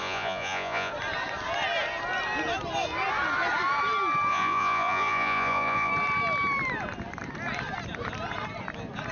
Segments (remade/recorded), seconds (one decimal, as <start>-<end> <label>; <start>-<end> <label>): 0.0-0.9 remade; 0.9-4.3 recorded; 4.3-5.9 remade; 5.9-9.1 recorded